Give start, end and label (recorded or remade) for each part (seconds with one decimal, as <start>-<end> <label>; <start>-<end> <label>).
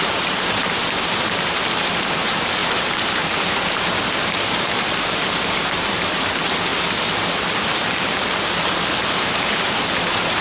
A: 0.0-6.7 remade; 6.7-9.1 recorded; 9.1-10.4 remade